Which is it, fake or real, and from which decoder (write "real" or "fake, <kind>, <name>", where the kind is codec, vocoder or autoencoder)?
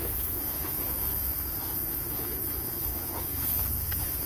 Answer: fake, autoencoder, DAC-VAE